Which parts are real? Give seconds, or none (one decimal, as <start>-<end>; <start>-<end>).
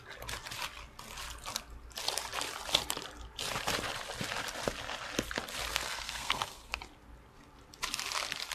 0.0-5.7; 6.8-8.5